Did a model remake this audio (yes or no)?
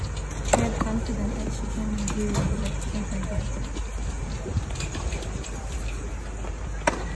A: no